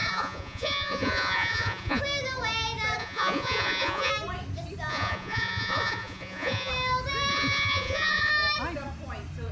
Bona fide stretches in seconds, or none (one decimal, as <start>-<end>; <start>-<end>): 2.0-3.0; 4.1-4.9; 6.7-7.3; 8.3-9.5